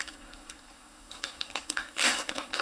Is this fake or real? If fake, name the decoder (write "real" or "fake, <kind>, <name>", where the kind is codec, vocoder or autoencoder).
fake, codec, SNAC